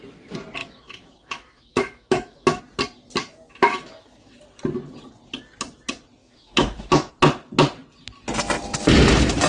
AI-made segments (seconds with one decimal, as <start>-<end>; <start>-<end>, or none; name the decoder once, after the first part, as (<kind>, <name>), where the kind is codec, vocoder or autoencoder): 0.6-2.6 (autoencoder, DAC-VAE); 3.2-4.4; 6.2-7.1

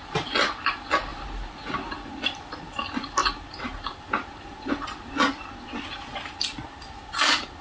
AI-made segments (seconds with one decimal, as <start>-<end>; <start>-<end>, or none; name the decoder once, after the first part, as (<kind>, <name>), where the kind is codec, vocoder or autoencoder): 1.1-1.7 (vocoder, BigVGAN v2); 3.2-4.7